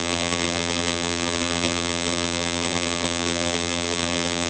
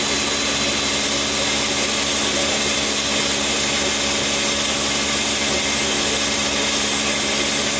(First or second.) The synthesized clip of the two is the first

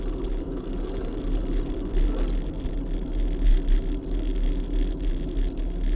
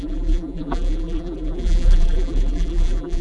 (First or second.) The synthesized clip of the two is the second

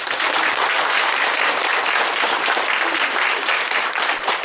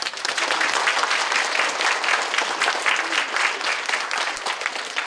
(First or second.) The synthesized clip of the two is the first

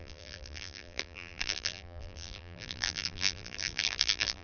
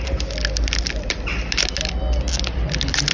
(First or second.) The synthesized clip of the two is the first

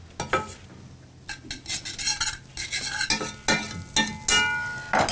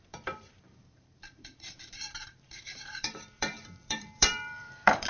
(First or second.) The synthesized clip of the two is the second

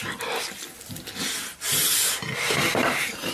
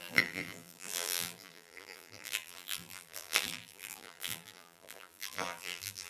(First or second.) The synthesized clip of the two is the second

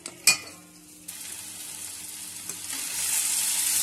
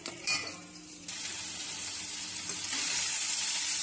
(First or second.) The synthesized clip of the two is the second